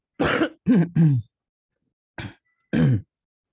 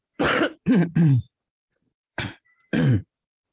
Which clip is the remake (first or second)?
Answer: second